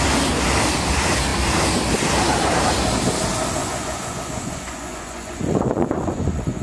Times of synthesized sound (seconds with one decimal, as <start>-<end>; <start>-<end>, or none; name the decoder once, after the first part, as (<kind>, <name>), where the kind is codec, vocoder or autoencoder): 3.6-6.6 (vocoder, Vocos)